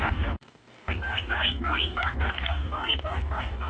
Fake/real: fake